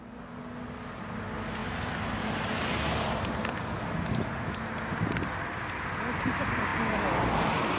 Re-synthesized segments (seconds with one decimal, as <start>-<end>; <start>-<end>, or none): none